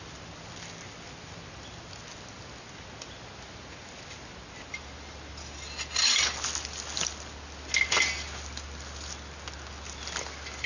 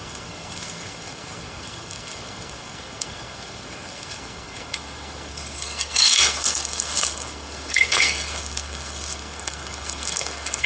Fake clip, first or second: second